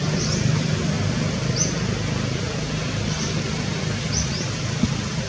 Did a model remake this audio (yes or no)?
no